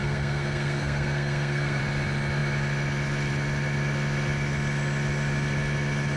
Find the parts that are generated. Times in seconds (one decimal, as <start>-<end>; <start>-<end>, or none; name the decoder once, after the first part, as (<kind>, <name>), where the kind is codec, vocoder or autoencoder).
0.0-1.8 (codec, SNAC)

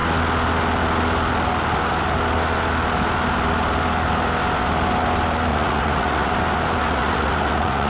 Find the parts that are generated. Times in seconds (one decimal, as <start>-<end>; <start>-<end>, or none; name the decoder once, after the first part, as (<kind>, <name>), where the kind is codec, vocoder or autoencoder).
5.5-6.3 (vocoder, Vocos); 6.8-7.9

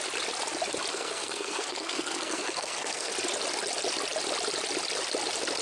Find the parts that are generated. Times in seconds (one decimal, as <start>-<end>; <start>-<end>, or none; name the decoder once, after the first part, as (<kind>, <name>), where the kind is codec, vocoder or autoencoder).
0.9-3.1 (codec, SNAC)

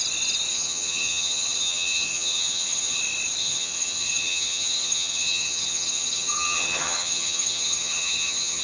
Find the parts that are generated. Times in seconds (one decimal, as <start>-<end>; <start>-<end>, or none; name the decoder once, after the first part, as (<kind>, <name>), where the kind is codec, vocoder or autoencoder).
0.5-3.0 (vocoder, HiFi-GAN); 3.4-8.6

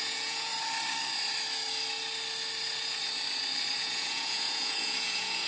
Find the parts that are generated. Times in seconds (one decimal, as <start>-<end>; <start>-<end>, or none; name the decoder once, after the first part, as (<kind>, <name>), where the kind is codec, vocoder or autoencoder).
0.0-0.5 (vocoder, Vocos); 3.8-5.5

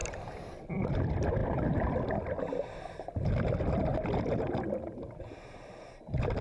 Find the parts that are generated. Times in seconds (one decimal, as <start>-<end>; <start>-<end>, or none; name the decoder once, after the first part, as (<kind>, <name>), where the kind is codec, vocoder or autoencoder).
0.0-0.6 (vocoder, BigVGAN v2); 1.4-1.9; 3.9-5.0